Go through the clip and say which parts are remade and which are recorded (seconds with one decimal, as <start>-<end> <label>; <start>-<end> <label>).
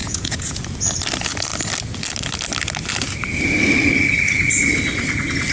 0.0-0.6 remade; 0.6-5.5 recorded